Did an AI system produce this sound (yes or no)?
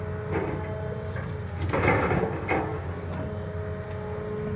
no